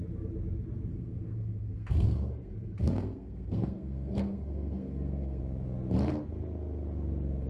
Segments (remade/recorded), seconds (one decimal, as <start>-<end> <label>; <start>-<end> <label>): 0.0-0.9 recorded; 0.9-5.4 remade; 5.4-7.5 recorded